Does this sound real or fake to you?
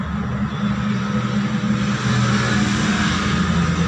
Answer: real